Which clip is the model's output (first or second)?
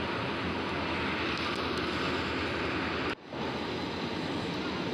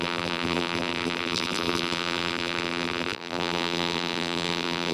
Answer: second